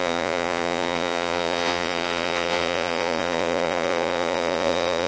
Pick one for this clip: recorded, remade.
remade